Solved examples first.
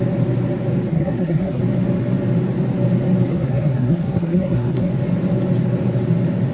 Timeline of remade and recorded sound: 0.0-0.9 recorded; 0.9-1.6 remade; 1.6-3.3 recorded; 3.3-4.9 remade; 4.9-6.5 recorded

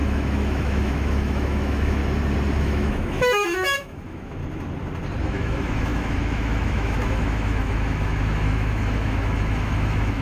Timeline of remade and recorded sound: 0.0-2.0 remade; 2.0-2.6 recorded; 2.6-4.4 remade; 4.4-5.2 recorded; 5.2-10.2 remade